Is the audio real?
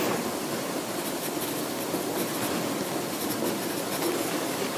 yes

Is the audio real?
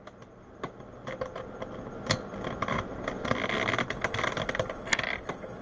yes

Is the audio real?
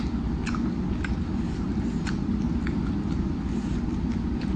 yes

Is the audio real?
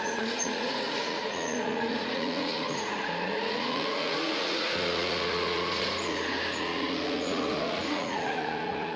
no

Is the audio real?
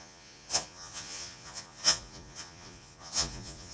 no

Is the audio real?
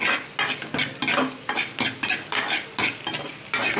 yes